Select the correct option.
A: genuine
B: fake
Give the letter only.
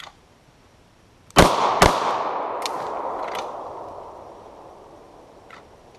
A